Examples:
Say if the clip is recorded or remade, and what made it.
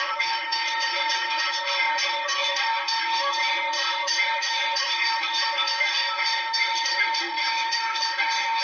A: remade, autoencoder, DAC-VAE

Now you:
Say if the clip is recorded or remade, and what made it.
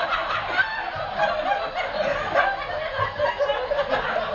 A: recorded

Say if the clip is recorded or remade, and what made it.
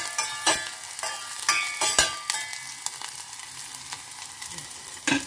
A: recorded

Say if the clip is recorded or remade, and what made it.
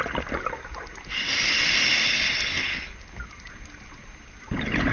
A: recorded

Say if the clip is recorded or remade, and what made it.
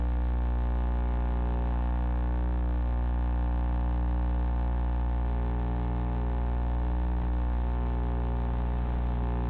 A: recorded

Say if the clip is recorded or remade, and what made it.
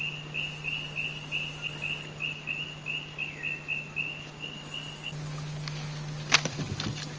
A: recorded